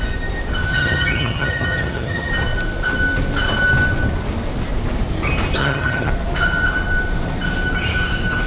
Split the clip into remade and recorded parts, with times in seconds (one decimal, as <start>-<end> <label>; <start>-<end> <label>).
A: 0.0-0.7 recorded; 0.7-2.3 remade; 2.3-5.6 recorded; 5.6-6.1 remade; 6.1-8.5 recorded